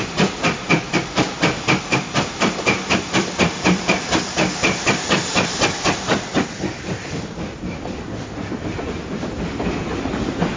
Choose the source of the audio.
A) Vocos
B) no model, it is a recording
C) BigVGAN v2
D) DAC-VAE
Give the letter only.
C